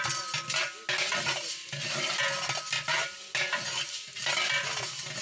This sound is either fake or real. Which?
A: real